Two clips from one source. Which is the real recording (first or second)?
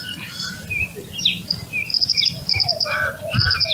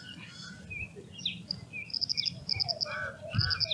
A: second